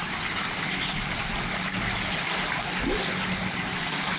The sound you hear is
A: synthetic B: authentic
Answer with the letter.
B